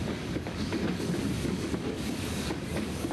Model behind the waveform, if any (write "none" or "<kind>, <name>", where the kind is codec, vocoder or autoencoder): codec, DAC